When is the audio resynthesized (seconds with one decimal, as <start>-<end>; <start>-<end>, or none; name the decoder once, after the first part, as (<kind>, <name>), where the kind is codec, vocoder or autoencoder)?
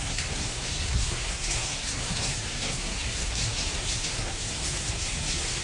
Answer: 0.0-5.6 (codec, SNAC)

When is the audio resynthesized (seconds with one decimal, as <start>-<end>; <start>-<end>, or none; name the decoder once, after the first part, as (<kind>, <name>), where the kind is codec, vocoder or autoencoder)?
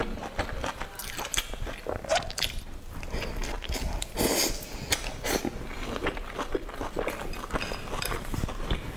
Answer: none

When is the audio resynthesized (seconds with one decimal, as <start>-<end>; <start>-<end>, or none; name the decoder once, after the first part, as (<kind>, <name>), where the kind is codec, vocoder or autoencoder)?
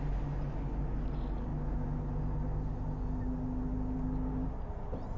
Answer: none